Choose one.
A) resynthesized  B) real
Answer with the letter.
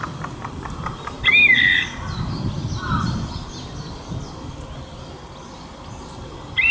B